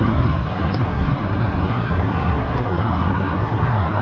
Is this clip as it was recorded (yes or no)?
no